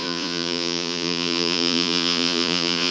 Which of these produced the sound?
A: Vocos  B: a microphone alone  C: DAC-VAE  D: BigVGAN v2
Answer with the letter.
A